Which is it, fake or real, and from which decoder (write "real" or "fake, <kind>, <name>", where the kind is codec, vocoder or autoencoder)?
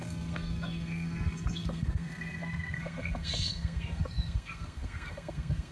fake, codec, SNAC